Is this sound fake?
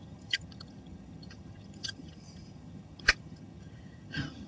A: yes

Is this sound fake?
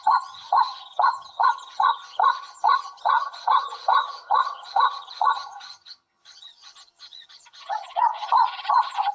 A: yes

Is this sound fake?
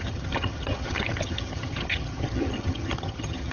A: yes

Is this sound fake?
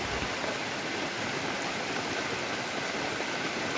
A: no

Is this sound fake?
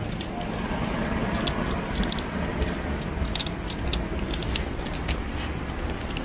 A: no